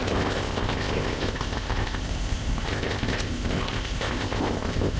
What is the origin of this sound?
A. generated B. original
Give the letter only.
A